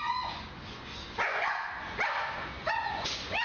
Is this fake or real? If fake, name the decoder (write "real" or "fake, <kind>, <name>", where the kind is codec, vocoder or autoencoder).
fake, vocoder, Vocos